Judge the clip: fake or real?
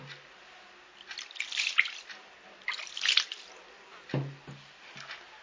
real